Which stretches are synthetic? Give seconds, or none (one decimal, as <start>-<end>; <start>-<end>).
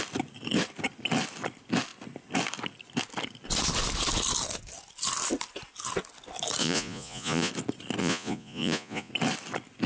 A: 6.6-7.5; 8.0-9.1